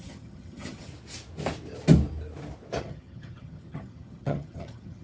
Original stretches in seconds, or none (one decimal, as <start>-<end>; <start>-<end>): 0.9-2.8